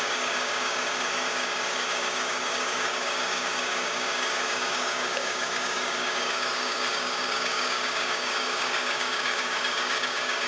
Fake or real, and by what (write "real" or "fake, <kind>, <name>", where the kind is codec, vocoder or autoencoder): fake, codec, DAC